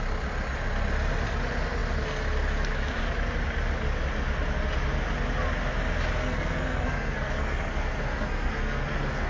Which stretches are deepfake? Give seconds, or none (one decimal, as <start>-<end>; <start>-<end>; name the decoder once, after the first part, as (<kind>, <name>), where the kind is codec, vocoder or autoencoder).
6.2-9.3 (codec, SNAC)